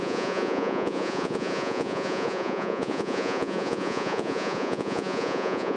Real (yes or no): no